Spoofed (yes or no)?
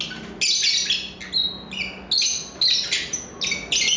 no